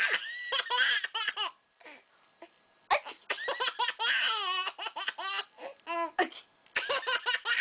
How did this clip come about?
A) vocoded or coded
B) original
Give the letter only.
B